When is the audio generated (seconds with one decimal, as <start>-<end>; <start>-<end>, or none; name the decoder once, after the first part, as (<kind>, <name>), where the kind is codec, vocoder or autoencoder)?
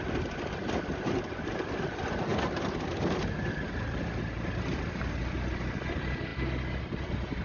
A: 2.3-5.0 (vocoder, BigVGAN v2)